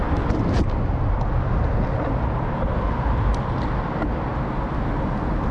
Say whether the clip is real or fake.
real